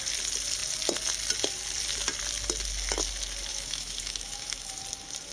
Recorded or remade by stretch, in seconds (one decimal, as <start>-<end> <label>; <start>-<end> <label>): 0.0-3.5 recorded; 3.5-4.8 remade; 4.8-5.3 recorded